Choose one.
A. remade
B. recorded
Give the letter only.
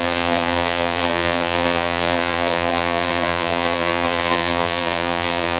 A